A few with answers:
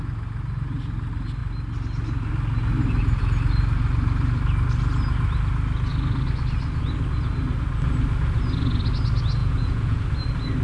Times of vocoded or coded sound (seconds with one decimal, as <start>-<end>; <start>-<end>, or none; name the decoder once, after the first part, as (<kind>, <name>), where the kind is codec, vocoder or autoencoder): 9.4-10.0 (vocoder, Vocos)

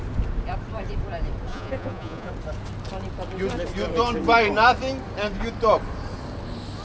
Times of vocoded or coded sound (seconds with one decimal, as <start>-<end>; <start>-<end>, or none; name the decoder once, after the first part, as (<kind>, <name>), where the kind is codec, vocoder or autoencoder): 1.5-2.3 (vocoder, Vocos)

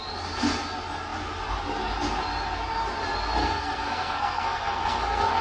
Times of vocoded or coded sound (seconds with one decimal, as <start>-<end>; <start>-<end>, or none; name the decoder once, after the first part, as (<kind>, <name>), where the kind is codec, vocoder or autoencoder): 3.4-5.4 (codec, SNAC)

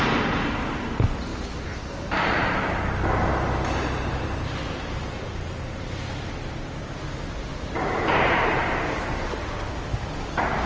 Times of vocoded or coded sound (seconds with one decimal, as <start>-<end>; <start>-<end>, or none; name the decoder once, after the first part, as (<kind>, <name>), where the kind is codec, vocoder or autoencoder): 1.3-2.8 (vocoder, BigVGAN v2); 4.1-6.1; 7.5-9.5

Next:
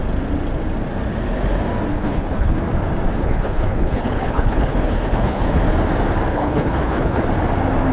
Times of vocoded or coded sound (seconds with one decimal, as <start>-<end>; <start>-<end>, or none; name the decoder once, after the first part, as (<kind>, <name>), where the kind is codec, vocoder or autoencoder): 1.9-2.6 (codec, HILCodec); 3.2-5.6; 6.3-7.2